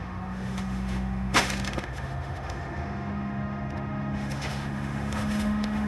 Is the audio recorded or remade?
remade